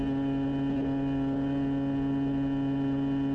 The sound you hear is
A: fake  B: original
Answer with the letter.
B